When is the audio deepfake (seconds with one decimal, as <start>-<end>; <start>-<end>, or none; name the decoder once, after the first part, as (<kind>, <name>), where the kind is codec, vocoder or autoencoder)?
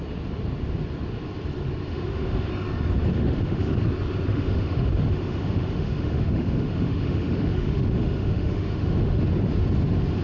1.9-2.5 (autoencoder, DAC-VAE); 3.1-3.7; 4.3-9.2